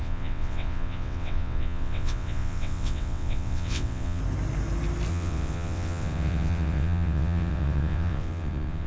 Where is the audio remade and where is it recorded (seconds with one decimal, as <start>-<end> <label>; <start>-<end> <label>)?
0.0-4.2 remade; 4.2-5.1 recorded; 5.1-8.9 remade